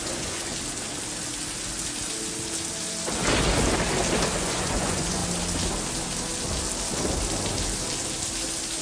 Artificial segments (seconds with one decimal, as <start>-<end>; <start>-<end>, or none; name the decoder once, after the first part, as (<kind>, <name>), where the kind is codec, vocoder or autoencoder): 0.0-0.5 (vocoder, Vocos); 4.4-5.2